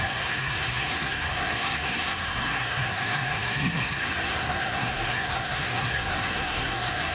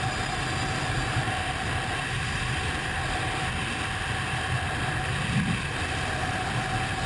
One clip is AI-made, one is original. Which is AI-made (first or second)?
first